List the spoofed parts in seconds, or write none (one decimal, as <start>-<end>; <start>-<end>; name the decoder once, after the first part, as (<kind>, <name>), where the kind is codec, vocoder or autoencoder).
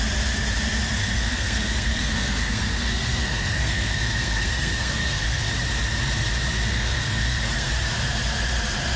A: 1.0-5.5 (codec, SNAC); 6.7-7.7